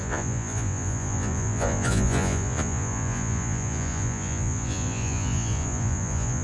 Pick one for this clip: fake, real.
fake